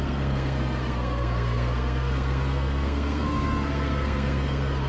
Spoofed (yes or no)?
yes